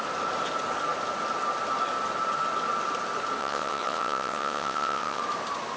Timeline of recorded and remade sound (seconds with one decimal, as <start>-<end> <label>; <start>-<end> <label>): 0.0-3.4 recorded; 3.4-5.2 remade; 5.2-5.8 recorded